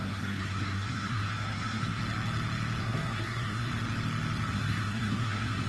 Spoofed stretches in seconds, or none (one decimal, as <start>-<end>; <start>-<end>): 0.0-2.0; 2.8-3.7; 4.5-5.7